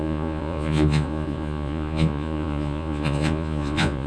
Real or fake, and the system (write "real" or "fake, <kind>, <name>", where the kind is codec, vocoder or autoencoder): fake, vocoder, Vocos